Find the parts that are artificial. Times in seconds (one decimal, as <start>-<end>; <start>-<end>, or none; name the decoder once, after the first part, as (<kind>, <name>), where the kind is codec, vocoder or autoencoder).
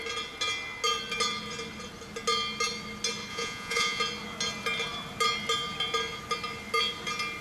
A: 3.3-4.0 (vocoder, Vocos)